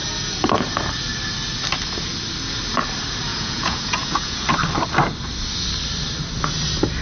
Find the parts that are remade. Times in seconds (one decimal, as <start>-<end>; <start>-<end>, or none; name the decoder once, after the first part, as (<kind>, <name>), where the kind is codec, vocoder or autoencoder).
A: 3.3-4.4 (vocoder, Vocos)

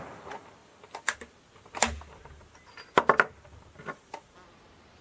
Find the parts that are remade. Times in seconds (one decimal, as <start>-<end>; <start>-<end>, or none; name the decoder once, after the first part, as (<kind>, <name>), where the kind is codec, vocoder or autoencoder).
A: 0.6-2.2 (vocoder, BigVGAN v2)

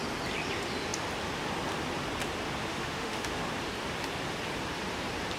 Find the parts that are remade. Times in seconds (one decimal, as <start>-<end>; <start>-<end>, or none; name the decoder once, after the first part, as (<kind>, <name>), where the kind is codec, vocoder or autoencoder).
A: 2.7-3.3 (autoencoder, DAC-VAE)

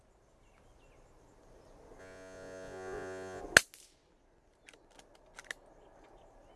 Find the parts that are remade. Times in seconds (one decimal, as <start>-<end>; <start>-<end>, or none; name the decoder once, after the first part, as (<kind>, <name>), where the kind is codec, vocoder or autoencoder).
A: 2.0-3.4 (vocoder, Vocos)